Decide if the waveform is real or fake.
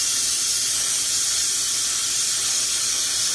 real